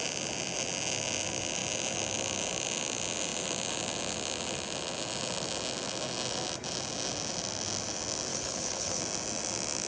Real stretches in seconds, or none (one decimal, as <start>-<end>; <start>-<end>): 0.0-8.3; 9.0-9.9